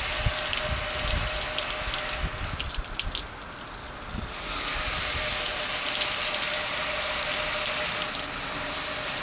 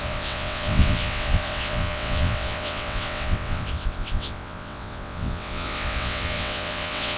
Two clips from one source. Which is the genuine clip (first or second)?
first